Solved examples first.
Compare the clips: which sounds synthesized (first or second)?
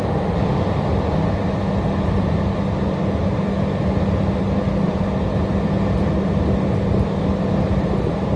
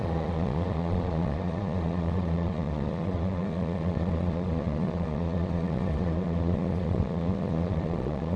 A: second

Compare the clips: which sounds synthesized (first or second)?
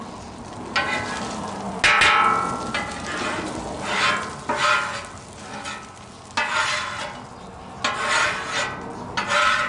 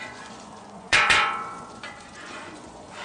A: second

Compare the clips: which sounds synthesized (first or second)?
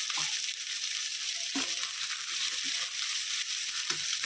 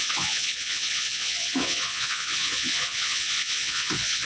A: second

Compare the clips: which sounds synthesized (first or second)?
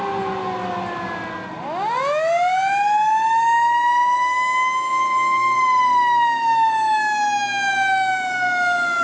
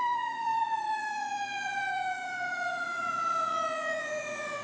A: second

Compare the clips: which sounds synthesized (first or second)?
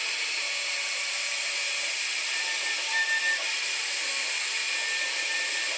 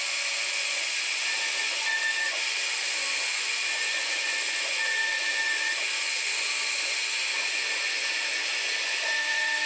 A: second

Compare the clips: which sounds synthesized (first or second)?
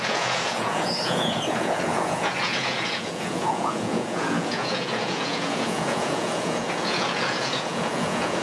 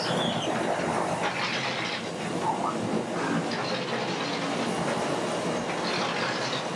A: first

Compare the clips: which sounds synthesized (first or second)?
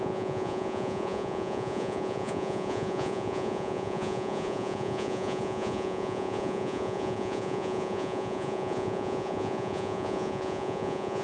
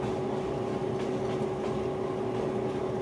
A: first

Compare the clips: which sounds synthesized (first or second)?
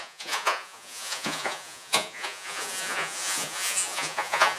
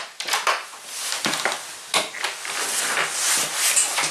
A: first